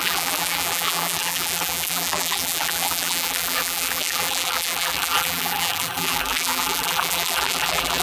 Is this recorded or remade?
remade